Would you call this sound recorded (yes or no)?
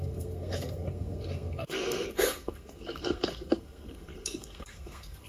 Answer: no